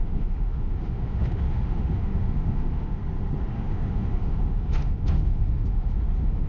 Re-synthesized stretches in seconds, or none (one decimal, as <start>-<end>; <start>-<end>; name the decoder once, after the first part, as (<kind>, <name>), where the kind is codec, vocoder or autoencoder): 0.0-3.0 (autoencoder, DAC-VAE); 3.5-6.5